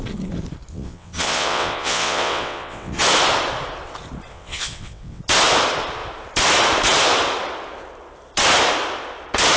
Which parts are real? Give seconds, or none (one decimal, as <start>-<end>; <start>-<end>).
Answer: 0.0-0.7; 3.0-4.3; 5.2-9.6